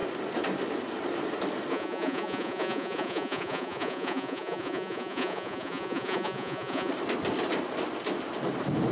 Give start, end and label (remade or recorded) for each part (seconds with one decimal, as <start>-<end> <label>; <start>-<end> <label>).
0.0-1.7 recorded; 1.7-6.9 remade; 6.9-8.9 recorded